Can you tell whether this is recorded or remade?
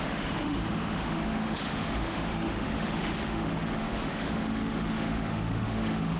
remade